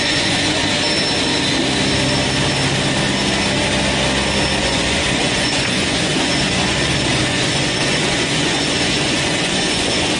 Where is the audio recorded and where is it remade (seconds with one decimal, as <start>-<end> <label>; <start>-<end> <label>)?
0.0-0.6 remade; 0.6-4.6 recorded; 4.6-10.2 remade

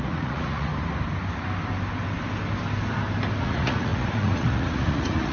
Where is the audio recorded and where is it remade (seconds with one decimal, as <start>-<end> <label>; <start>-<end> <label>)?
0.0-0.7 remade; 0.7-3.4 recorded; 3.4-5.3 remade

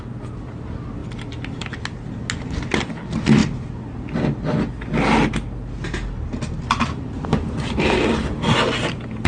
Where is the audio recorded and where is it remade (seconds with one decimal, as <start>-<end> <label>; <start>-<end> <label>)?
0.0-9.3 recorded

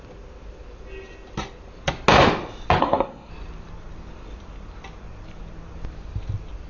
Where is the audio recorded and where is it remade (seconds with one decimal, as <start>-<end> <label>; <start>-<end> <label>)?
0.0-2.8 recorded; 2.8-3.3 remade; 3.3-6.7 recorded

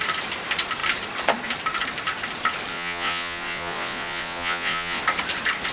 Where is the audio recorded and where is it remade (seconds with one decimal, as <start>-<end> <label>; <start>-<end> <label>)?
0.0-2.7 recorded; 2.7-5.0 remade; 5.0-5.7 recorded

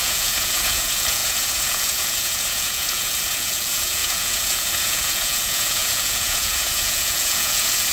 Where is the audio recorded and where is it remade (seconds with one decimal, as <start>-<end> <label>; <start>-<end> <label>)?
0.0-7.9 remade

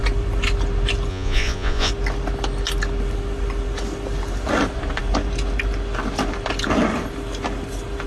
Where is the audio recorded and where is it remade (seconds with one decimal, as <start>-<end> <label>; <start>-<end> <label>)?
0.0-1.1 recorded; 1.1-1.9 remade; 1.9-8.1 recorded